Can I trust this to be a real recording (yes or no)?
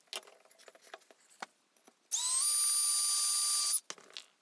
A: yes